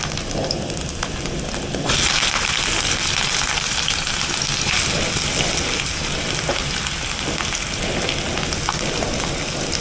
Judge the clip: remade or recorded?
recorded